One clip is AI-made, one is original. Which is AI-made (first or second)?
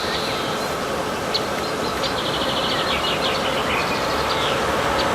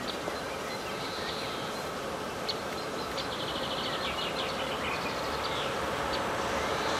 second